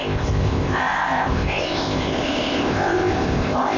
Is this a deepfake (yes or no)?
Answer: yes